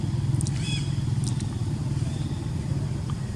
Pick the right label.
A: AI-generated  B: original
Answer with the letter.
A